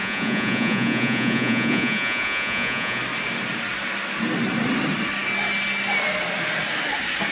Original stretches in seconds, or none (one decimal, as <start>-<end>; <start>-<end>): 3.0-7.3

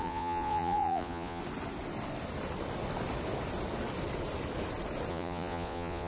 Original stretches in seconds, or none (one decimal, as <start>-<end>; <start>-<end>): 1.4-5.1